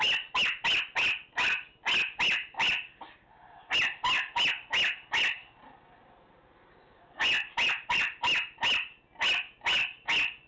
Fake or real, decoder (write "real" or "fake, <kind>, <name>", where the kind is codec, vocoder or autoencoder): real